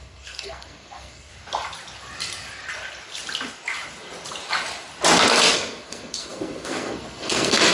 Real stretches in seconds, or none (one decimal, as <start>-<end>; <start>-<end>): 1.3-5.3